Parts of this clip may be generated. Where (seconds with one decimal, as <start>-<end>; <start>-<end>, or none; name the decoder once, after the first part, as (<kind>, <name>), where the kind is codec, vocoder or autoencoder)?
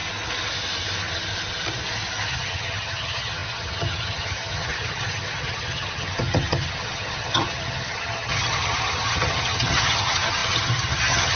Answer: 2.3-11.4 (vocoder, HiFi-GAN)